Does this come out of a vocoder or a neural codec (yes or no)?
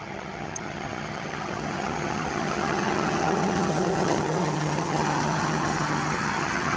yes